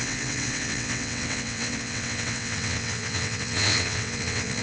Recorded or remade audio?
remade